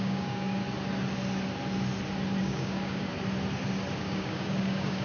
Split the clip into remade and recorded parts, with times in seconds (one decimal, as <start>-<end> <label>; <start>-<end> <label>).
0.0-0.6 remade; 0.6-2.4 recorded; 2.4-3.1 remade; 3.1-4.0 recorded; 4.0-5.0 remade